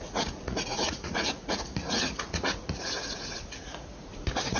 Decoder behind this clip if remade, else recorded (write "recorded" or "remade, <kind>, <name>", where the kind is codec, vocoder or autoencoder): remade, vocoder, Vocos